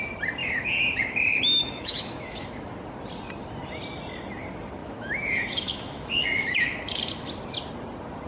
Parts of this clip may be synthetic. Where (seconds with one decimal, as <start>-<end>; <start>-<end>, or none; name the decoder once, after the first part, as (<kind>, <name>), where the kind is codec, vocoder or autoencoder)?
0.4-2.7 (autoencoder, DAC-VAE); 4.8-7.0